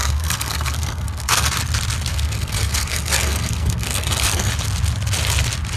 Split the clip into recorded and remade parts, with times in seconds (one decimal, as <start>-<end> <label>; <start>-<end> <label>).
0.0-1.5 remade; 1.5-2.1 recorded; 2.1-4.5 remade; 4.5-5.8 recorded